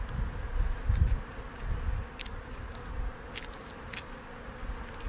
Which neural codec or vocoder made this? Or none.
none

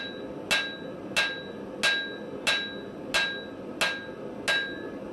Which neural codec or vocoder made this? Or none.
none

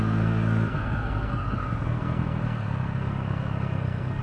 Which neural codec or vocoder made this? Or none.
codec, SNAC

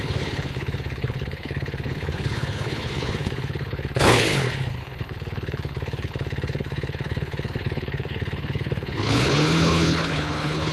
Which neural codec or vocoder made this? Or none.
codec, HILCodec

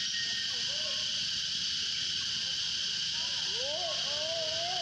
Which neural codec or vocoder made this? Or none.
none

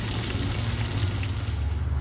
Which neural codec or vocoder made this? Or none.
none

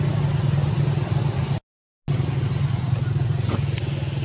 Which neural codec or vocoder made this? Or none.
none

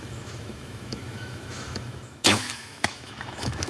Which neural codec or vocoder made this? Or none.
autoencoder, DAC-VAE